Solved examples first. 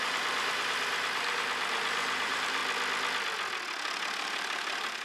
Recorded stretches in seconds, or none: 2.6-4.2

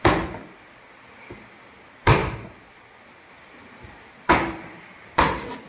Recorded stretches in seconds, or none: 2.2-3.3

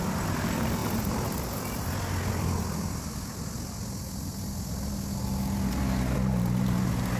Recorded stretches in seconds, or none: 0.0-7.2

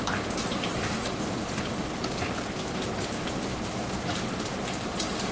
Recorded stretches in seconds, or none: 0.0-0.7; 1.7-4.5

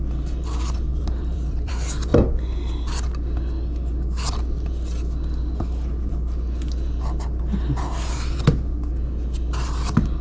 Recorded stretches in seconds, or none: 0.0-0.9; 1.7-10.2

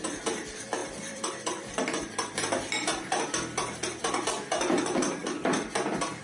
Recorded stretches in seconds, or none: 0.0-0.8; 3.2-6.2

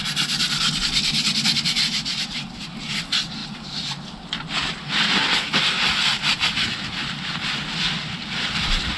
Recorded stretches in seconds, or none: 0.0-2.1; 2.9-9.0